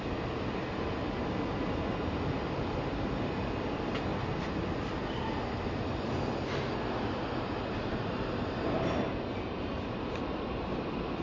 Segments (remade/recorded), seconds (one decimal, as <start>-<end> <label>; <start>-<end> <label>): 0.0-11.2 recorded